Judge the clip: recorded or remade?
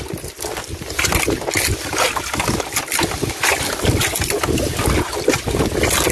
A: recorded